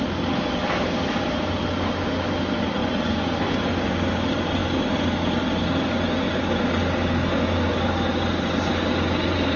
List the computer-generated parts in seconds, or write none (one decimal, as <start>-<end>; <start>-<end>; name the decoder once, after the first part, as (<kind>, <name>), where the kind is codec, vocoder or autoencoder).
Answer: 2.8-3.4 (vocoder, Vocos)